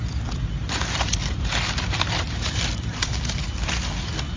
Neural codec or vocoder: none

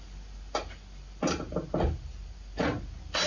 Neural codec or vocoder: none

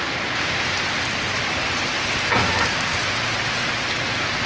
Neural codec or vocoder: none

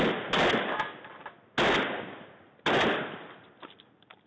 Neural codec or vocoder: none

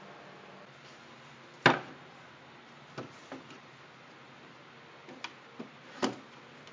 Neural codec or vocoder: none